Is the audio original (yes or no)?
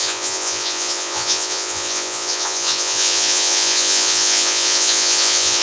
no